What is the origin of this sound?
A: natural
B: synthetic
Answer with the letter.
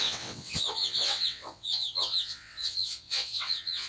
B